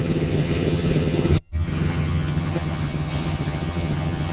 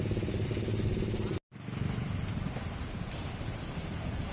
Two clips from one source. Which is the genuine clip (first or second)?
second